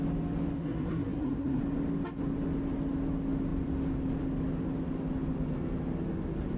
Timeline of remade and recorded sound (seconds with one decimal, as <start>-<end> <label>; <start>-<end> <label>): 0.0-0.6 recorded; 0.6-1.6 remade; 1.6-6.6 recorded